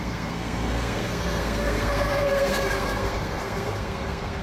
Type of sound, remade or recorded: remade